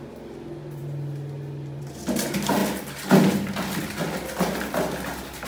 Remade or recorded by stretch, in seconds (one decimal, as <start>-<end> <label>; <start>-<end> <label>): 0.0-5.5 recorded

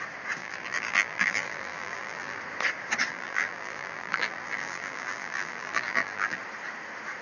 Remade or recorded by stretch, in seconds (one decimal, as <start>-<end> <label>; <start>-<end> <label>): 0.0-0.4 recorded; 0.4-2.4 remade; 2.4-3.1 recorded; 3.1-6.4 remade; 6.4-7.2 recorded

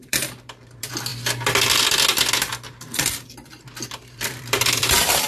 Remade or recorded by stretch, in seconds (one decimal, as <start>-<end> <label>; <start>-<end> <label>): 0.0-1.1 remade; 1.1-4.0 recorded; 4.0-5.3 remade

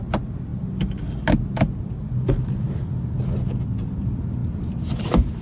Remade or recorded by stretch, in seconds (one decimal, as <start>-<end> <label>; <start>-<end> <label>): 0.0-5.4 recorded

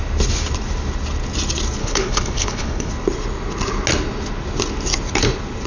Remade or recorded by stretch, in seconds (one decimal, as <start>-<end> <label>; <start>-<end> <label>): 0.0-1.8 recorded; 1.8-2.9 remade; 2.9-5.7 recorded